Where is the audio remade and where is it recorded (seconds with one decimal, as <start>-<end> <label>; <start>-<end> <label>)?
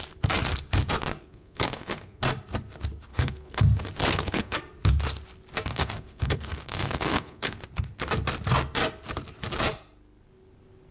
0.0-1.2 recorded; 1.2-2.2 remade; 2.2-3.1 recorded; 3.1-3.6 remade; 3.6-4.0 recorded; 4.0-4.6 remade; 4.6-5.7 recorded; 5.7-7.6 remade; 7.6-10.9 recorded